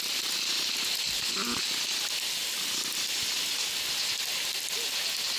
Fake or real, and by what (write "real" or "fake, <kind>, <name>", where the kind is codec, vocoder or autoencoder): real